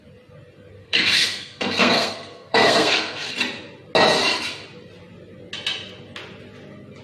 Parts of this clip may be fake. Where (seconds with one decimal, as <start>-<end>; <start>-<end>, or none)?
0.8-3.3